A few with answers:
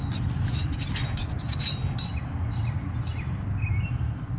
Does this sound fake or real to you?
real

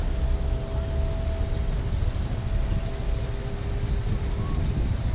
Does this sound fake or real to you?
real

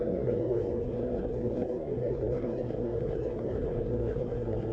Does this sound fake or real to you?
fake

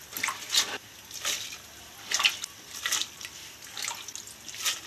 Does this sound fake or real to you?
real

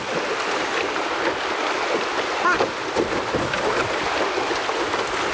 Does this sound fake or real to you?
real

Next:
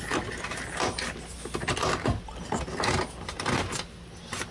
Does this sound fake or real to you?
real